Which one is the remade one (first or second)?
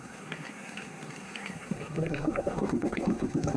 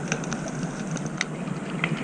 first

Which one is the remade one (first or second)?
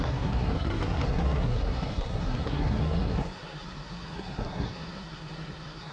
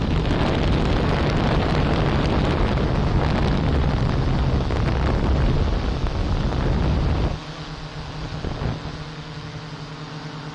first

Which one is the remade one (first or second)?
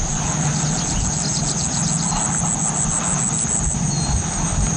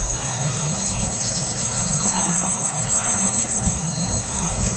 second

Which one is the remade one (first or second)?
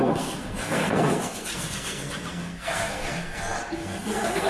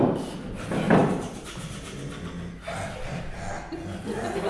first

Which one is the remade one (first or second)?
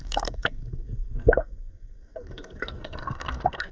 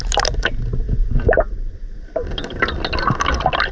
first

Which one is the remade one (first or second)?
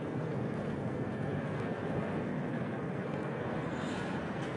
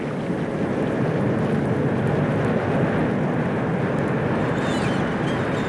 first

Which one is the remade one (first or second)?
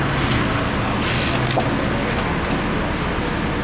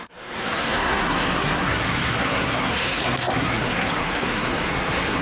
second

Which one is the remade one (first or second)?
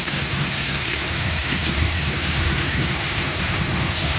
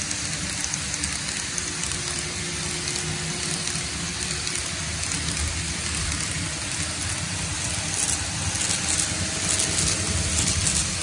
first